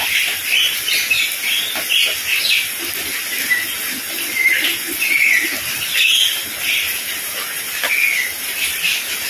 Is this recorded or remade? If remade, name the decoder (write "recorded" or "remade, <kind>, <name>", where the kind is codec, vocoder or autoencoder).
recorded